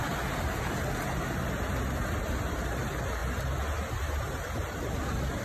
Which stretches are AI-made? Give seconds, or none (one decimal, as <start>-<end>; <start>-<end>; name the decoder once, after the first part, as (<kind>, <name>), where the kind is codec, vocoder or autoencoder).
none